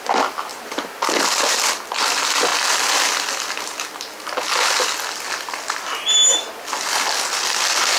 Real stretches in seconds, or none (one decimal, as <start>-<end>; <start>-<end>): 0.0-0.5; 1.9-8.0